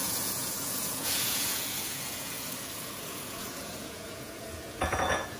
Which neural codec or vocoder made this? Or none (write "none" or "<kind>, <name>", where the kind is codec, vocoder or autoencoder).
vocoder, Vocos